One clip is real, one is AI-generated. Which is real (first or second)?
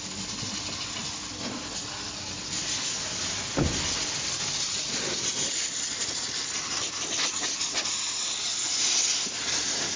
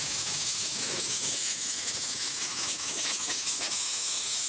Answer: first